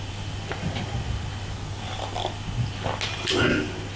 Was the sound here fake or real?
real